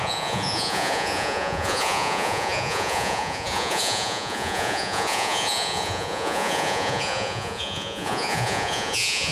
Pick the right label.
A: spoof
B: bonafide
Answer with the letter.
A